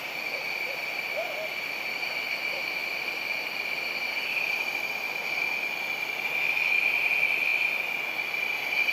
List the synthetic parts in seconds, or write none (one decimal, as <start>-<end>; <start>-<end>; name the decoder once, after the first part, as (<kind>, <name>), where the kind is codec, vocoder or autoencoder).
none